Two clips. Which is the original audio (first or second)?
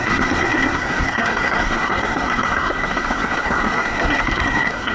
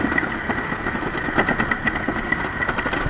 second